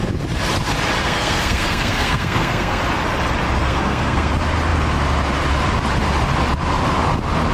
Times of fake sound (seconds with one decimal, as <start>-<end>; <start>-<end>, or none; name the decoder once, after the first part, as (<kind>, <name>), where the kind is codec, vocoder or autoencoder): 1.0-2.8 (codec, SNAC); 3.6-4.3